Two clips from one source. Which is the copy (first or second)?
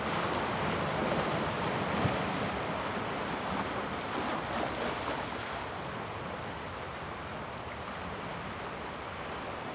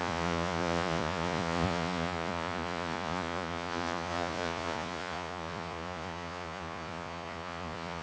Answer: second